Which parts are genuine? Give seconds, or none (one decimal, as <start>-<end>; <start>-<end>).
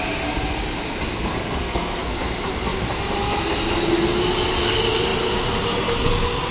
0.0-1.3; 2.0-6.5